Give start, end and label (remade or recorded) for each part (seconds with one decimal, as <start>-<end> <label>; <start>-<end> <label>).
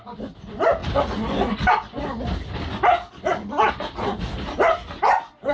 0.0-5.5 recorded